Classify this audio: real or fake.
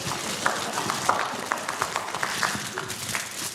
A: real